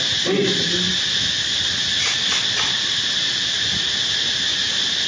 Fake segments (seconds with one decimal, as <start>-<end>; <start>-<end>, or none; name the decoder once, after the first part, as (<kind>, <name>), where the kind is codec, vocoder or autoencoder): none